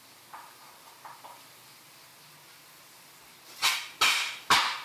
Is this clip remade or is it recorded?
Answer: recorded